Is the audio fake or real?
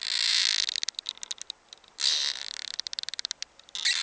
real